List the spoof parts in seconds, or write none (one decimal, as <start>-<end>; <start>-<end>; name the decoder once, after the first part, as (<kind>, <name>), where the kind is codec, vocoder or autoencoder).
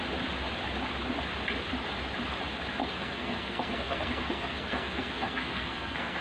2.8-6.2 (codec, SNAC)